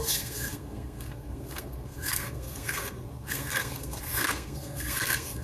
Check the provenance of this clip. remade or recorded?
remade